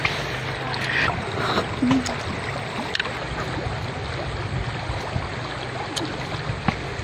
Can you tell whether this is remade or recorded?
recorded